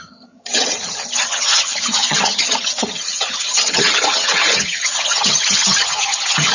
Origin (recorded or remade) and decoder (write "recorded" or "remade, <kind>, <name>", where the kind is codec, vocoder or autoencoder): remade, vocoder, HiFi-GAN